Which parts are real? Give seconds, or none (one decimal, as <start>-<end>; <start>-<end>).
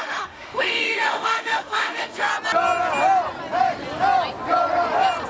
2.3-5.3